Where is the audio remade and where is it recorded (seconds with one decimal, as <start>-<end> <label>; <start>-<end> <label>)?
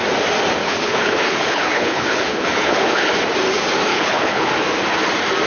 0.0-0.6 recorded; 0.6-3.1 remade; 3.1-3.9 recorded; 3.9-4.5 remade; 4.5-5.5 recorded